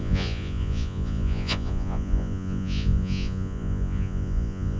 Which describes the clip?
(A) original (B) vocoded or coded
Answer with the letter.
B